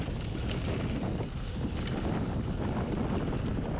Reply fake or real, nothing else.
real